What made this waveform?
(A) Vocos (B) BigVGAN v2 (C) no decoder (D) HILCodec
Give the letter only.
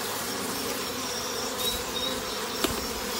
B